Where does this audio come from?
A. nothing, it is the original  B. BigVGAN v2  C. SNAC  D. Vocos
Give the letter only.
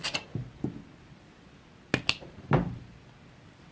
A